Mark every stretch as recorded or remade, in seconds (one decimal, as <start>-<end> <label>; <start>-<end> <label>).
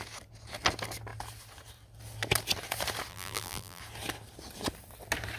0.0-3.1 recorded; 3.1-3.8 remade; 3.8-5.4 recorded